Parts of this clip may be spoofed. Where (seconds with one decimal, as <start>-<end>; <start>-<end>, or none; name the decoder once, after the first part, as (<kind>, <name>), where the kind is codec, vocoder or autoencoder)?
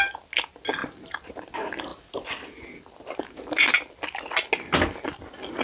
0.8-1.5 (vocoder, BigVGAN v2)